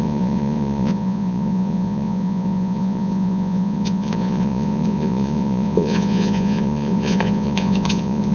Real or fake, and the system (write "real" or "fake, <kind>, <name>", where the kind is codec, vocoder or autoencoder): fake, vocoder, Vocos